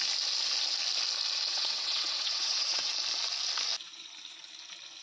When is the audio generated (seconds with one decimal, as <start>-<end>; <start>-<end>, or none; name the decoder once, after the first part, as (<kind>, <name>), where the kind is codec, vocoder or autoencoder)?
1.5-2.9 (vocoder, WaveNeXt)